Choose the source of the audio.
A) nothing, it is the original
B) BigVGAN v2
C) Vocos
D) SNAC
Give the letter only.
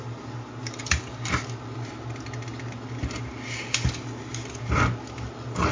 A